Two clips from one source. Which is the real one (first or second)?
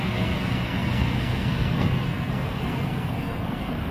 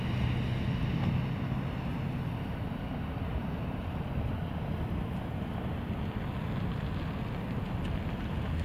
second